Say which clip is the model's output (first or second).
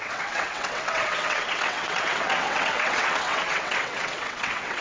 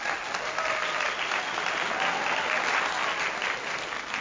first